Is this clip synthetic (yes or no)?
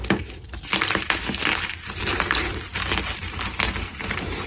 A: no